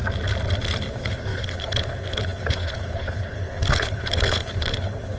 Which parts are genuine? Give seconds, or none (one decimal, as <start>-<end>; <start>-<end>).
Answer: 0.0-0.9